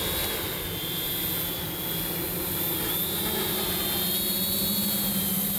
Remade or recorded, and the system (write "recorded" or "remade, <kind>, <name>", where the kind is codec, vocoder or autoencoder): recorded